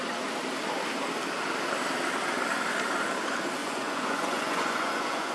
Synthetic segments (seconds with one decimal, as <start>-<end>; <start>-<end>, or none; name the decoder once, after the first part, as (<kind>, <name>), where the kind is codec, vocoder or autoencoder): 3.6-5.3 (vocoder, Vocos)